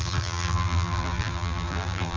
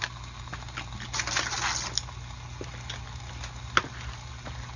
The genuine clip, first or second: second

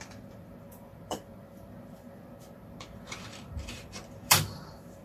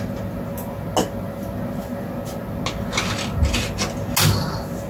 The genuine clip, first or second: second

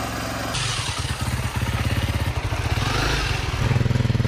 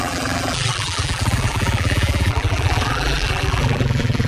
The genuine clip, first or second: first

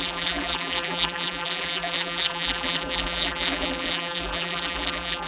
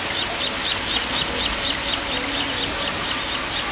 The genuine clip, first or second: second